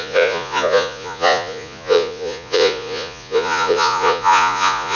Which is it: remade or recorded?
remade